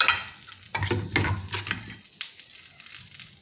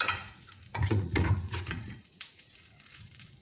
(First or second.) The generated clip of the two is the second